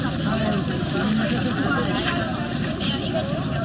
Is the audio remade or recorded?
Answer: remade